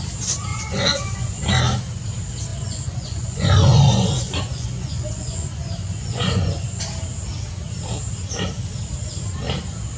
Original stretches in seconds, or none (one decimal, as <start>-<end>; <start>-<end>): 0.0-0.5; 1.5-2.5; 6.8-10.0